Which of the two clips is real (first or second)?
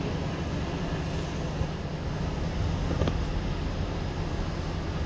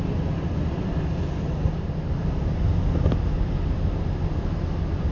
first